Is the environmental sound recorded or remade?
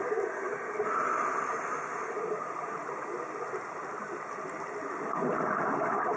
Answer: recorded